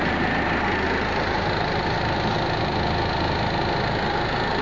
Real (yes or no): yes